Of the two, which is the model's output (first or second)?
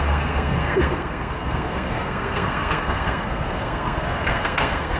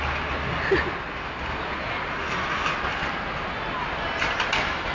first